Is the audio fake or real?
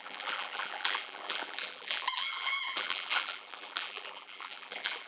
fake